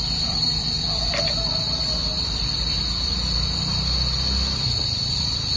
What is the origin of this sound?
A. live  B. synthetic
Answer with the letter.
B